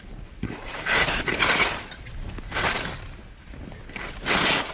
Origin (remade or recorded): recorded